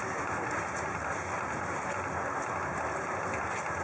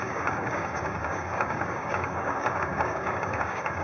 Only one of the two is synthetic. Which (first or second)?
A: second